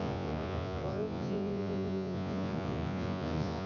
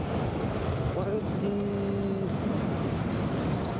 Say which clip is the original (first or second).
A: second